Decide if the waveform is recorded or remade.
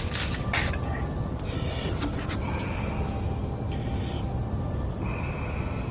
recorded